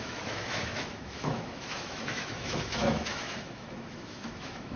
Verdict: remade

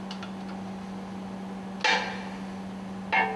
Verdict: recorded